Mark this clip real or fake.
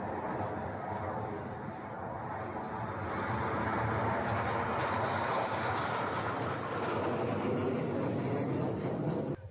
real